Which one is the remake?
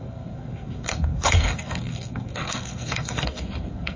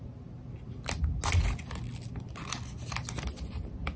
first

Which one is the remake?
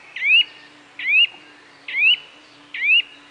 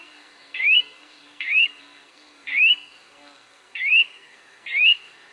second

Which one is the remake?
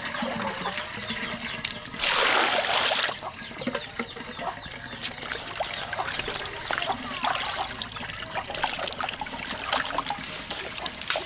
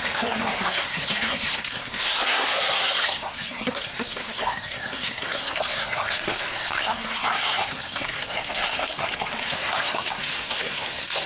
second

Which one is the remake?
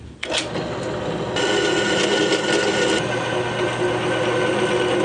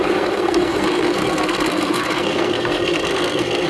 second